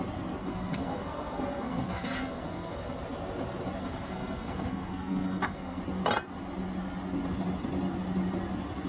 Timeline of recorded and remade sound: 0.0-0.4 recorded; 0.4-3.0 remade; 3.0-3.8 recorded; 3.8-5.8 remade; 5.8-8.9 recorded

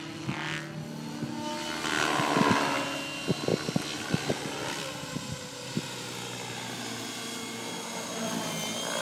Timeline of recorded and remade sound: 0.0-9.0 recorded

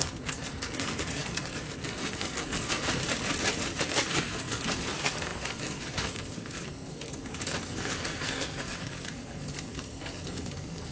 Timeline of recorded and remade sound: 0.0-3.0 remade; 3.0-3.8 recorded; 3.8-10.9 remade